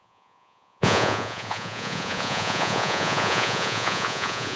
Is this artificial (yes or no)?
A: yes